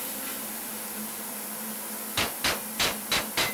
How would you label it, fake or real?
real